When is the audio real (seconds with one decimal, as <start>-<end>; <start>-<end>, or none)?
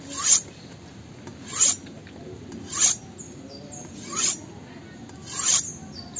0.0-6.2